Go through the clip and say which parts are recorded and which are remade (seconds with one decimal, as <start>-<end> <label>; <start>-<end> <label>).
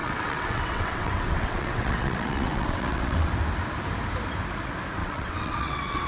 0.0-3.3 remade; 3.3-5.0 recorded; 5.0-6.1 remade